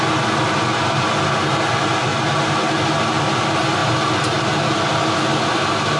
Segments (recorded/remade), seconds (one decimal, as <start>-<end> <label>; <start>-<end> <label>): 0.0-2.1 recorded; 2.1-2.6 remade; 2.6-6.0 recorded